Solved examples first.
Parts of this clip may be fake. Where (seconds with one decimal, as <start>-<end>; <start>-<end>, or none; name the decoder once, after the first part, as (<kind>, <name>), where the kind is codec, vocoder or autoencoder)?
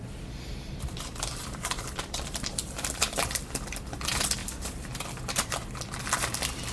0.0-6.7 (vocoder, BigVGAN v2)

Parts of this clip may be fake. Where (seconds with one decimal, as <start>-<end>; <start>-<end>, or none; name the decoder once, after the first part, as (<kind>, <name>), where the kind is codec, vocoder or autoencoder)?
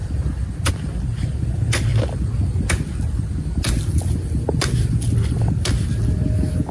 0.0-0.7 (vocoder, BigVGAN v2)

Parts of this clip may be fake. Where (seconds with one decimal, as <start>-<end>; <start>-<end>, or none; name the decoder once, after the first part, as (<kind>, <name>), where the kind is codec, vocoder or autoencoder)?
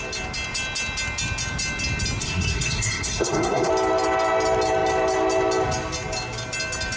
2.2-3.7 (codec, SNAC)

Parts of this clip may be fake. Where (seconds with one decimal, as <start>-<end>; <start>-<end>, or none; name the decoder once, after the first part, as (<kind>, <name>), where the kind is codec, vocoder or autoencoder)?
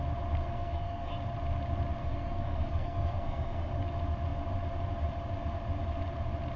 0.4-1.1 (codec, SNAC); 2.0-3.7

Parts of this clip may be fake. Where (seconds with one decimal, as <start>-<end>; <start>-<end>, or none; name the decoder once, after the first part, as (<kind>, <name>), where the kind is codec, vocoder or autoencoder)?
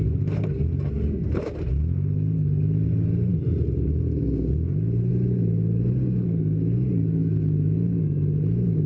none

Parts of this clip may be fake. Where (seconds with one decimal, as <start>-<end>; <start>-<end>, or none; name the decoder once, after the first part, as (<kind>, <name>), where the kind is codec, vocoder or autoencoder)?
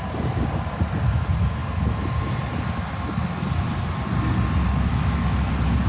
4.9-5.5 (autoencoder, DAC-VAE)